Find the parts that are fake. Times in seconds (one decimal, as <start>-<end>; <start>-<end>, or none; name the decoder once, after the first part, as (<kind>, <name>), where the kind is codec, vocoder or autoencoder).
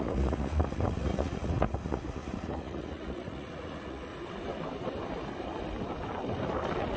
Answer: 0.0-4.1 (vocoder, Vocos)